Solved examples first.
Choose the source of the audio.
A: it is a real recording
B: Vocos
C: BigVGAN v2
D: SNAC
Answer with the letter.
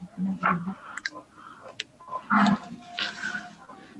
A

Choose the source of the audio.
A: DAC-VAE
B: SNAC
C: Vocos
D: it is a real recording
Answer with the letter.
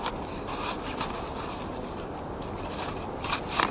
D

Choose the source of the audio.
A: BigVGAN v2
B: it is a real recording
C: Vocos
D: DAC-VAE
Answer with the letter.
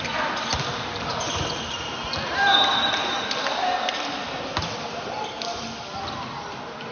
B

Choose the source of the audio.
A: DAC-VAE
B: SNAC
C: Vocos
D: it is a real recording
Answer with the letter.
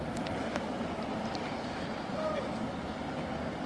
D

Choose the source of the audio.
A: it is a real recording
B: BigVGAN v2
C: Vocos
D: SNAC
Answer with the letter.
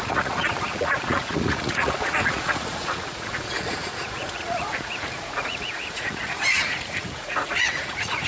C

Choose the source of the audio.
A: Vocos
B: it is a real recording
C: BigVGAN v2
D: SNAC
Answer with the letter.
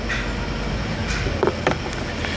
B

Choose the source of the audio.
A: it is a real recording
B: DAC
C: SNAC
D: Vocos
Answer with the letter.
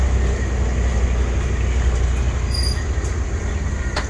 A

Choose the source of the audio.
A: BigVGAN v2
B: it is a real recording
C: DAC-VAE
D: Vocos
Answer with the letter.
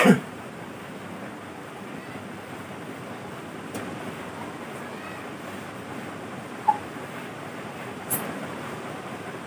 B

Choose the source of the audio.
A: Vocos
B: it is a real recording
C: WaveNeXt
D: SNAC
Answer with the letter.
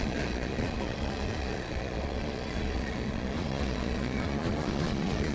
A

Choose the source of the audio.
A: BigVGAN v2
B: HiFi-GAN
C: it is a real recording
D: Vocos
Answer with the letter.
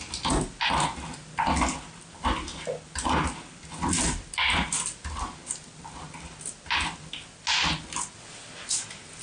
C